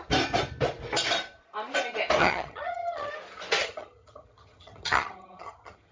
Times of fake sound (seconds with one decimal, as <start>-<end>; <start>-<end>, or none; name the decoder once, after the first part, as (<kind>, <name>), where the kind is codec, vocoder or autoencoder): 2.2-3.1 (vocoder, HiFi-GAN); 3.6-5.9